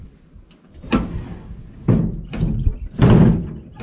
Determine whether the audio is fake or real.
real